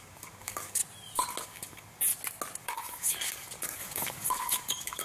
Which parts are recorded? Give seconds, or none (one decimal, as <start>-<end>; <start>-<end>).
0.8-1.4; 2.1-2.6